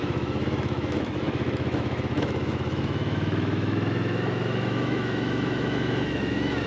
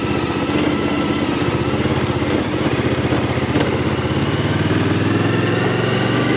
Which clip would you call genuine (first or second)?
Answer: second